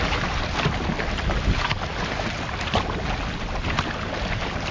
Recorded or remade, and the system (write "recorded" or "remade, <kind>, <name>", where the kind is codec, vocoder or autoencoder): recorded